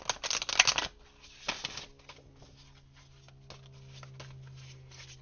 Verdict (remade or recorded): recorded